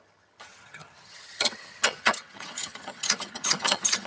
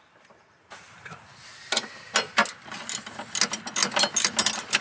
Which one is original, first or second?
second